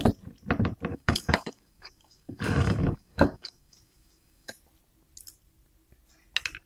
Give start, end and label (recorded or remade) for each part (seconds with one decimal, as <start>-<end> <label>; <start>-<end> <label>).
0.0-0.9 recorded; 0.9-4.5 remade; 4.5-6.7 recorded